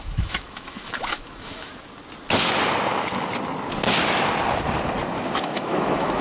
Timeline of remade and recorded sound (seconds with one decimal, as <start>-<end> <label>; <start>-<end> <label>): 0.0-1.7 remade; 1.7-5.4 recorded; 5.4-6.2 remade